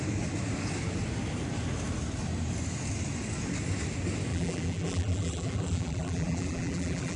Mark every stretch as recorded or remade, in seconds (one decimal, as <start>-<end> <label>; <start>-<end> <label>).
0.0-4.3 recorded; 4.3-7.2 remade